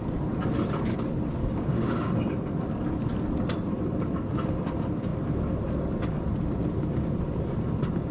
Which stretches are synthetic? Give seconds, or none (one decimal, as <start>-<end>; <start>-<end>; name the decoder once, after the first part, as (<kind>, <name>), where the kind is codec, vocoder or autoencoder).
1.4-2.1 (codec, DAC)